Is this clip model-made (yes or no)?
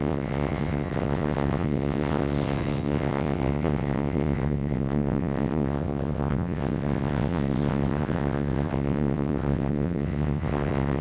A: yes